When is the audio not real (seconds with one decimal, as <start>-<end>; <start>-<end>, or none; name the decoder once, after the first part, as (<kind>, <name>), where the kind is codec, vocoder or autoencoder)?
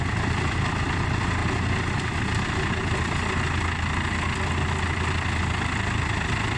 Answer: none